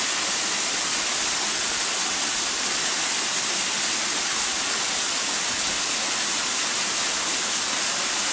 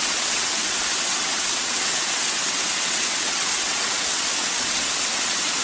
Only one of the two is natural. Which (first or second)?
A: first